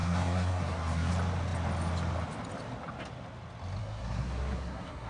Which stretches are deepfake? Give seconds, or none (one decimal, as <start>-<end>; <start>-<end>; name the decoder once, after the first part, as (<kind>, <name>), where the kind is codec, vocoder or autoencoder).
0.0-1.1 (codec, SNAC); 3.8-5.1